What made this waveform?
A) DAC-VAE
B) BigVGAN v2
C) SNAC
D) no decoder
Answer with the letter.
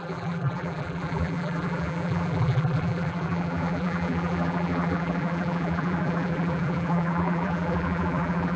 B